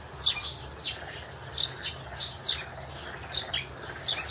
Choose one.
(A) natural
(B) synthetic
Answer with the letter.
A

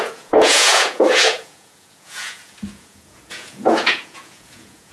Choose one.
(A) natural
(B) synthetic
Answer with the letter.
B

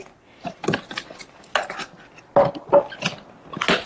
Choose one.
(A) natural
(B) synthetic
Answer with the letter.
A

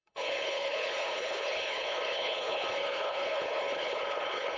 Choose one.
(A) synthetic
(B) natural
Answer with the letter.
A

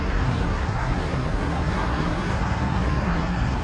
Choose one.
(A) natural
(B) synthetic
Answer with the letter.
B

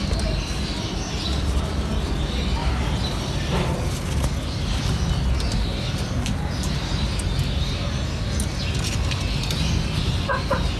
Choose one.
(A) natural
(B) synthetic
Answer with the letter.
A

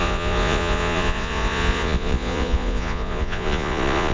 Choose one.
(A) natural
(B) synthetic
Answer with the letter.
B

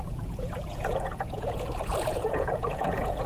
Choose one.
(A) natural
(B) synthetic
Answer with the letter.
B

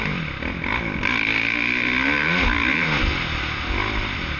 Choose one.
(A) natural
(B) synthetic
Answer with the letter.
A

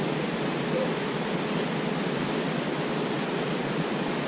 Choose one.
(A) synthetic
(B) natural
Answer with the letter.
B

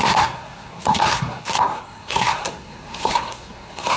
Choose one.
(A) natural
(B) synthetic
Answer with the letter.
B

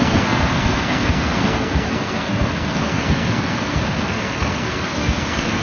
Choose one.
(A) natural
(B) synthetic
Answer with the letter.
B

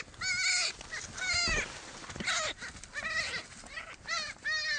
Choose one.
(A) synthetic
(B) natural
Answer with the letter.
B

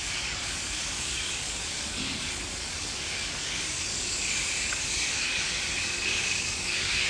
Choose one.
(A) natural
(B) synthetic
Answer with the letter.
B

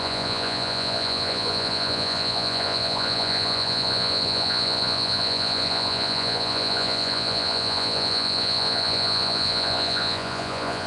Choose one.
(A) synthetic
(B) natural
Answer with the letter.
A